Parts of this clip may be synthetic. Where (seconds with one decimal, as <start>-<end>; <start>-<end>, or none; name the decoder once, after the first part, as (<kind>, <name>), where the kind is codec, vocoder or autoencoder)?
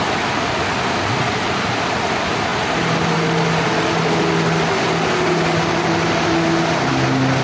none